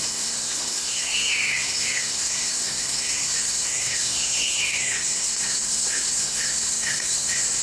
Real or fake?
fake